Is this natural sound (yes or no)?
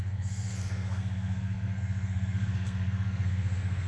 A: no